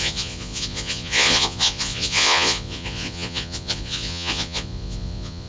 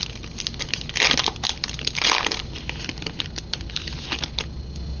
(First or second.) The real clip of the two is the second